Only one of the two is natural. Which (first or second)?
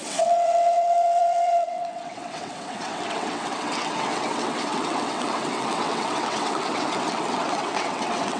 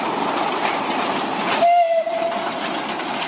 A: second